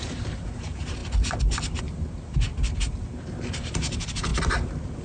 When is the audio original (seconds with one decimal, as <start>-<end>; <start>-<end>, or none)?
1.0-1.8; 2.5-3.2; 4.3-5.0